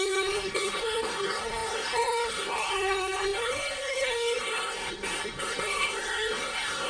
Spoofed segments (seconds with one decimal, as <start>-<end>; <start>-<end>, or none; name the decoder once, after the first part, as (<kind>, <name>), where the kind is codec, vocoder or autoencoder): 0.0-6.9 (codec, SNAC)